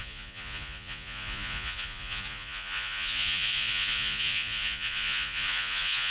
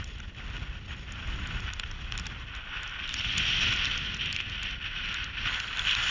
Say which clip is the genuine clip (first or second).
second